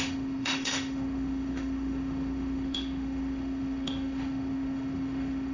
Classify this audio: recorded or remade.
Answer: remade